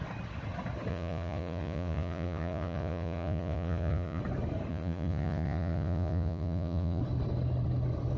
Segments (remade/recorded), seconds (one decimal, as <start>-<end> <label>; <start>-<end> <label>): 0.0-0.9 recorded; 0.9-4.2 remade; 4.2-4.7 recorded; 4.7-7.0 remade; 7.0-8.2 recorded